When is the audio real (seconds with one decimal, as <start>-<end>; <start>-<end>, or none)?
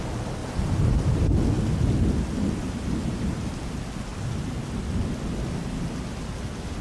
0.0-0.4; 1.3-2.6; 3.5-4.1; 4.8-6.8